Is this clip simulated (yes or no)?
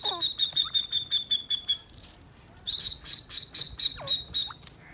no